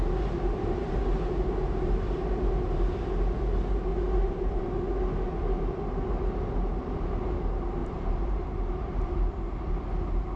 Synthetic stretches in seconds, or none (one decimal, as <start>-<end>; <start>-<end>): 0.8-2.2; 3.9-4.6; 7.8-9.3